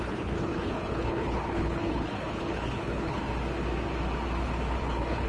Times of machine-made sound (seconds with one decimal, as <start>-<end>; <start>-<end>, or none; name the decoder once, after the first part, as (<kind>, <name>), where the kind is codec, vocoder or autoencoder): 0.0-3.2 (codec, HILCodec); 4.8-5.3